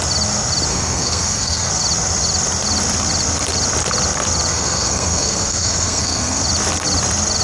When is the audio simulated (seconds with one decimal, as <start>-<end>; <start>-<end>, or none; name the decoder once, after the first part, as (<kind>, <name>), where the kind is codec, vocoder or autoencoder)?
0.7-1.7 (codec, SNAC); 4.5-6.4

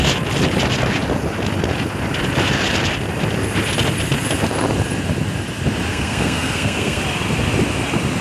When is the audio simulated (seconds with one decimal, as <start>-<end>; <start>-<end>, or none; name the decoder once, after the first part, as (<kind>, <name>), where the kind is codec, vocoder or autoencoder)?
5.9-7.0 (codec, SNAC)

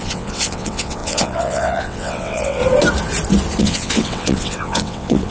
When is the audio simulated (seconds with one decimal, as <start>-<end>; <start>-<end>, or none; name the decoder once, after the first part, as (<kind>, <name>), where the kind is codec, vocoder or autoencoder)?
0.0-2.6 (vocoder, WaveNeXt); 3.6-5.3